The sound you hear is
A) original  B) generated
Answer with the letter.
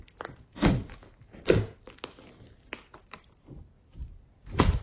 A